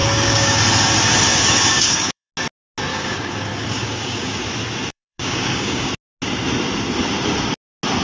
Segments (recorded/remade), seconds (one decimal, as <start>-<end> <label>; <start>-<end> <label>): 0.0-0.6 remade; 0.6-1.3 recorded; 1.3-2.3 remade; 2.3-2.9 recorded; 2.9-4.4 remade; 4.4-4.9 recorded; 4.9-5.9 remade; 5.9-8.0 recorded